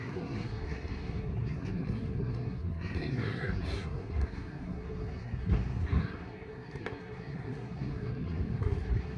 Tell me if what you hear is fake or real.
fake